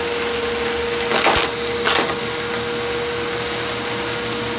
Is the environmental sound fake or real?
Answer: real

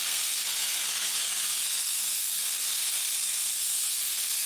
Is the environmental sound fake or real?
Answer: fake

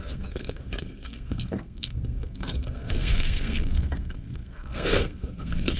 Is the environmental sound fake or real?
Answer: fake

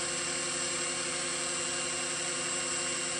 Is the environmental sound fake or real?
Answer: real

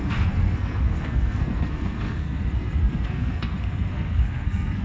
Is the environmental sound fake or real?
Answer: fake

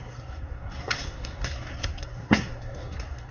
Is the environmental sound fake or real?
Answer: fake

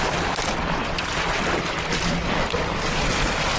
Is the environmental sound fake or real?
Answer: real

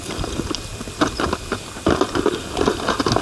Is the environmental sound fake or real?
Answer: real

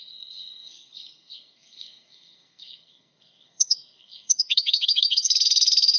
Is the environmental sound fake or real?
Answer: fake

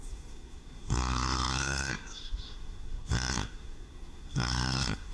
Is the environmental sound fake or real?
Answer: fake